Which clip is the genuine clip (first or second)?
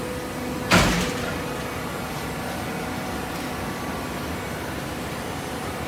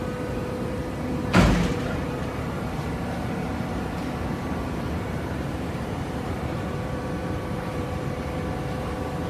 first